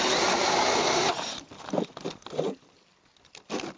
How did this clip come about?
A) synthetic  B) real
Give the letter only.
B